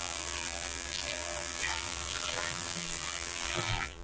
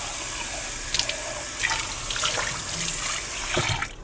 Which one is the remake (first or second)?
first